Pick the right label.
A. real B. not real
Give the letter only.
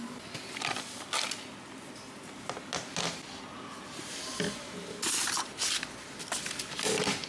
A